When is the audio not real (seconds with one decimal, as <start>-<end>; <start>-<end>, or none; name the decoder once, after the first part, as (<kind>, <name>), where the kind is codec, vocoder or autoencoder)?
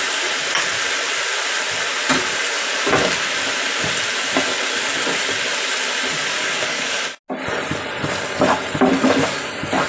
6.4-7.0 (codec, DAC)